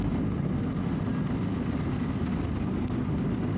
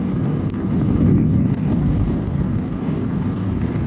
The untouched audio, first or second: first